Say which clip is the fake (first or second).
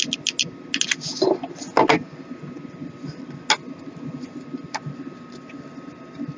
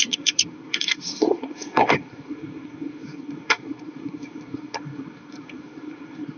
second